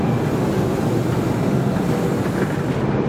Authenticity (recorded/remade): recorded